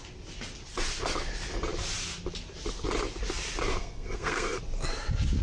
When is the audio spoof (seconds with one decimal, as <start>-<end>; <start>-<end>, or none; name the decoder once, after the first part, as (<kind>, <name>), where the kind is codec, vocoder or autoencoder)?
3.7-4.6 (codec, SNAC)